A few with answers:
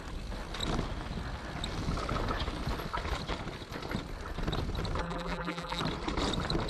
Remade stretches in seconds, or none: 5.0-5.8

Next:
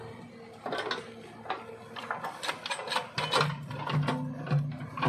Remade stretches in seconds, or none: none

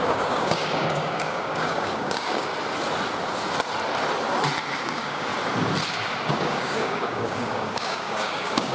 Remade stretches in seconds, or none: 0.0-2.5; 4.8-5.3; 6.3-8.7

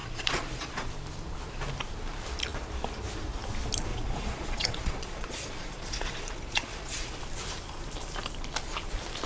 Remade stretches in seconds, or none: 0.0-0.9; 3.9-7.2